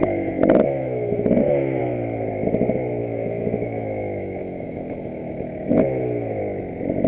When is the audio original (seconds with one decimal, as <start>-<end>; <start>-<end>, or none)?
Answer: 1.8-3.0; 6.4-7.1